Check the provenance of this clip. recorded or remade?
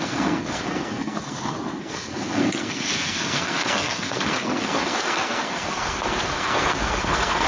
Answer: remade